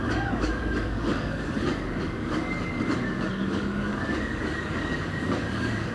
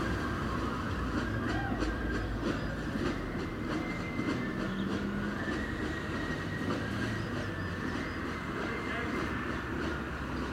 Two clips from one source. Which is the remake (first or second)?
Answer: first